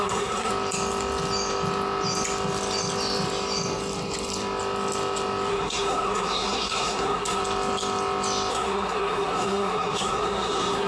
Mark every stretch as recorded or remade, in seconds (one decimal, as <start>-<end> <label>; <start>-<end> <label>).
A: 0.0-0.5 remade; 0.5-5.5 recorded; 5.5-7.4 remade; 7.4-8.5 recorded; 8.5-10.9 remade